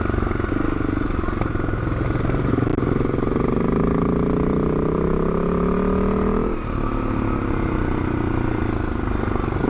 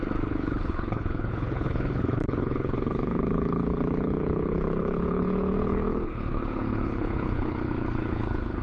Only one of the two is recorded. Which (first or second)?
first